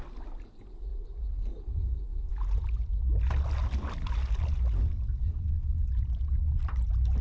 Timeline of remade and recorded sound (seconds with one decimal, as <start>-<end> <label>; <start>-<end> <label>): 0.0-7.2 recorded